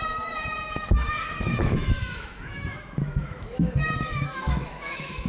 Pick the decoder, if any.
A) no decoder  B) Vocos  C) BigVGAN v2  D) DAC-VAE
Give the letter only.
D